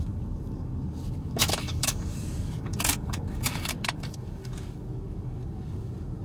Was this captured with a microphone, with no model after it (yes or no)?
no